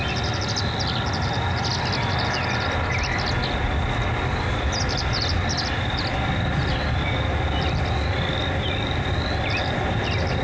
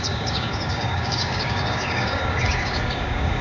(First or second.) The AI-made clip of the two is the second